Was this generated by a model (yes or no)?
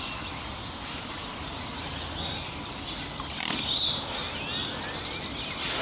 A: no